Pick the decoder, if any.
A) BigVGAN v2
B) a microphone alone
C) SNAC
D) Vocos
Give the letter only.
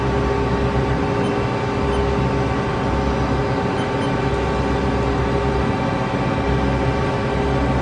B